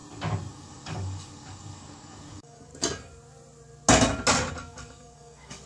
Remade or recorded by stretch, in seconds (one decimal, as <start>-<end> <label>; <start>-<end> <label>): 0.0-0.5 recorded; 0.5-2.7 remade; 2.7-4.5 recorded; 4.5-5.7 remade